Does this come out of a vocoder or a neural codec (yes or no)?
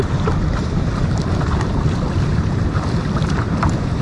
yes